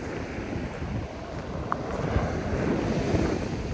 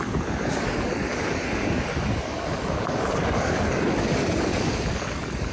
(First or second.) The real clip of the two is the first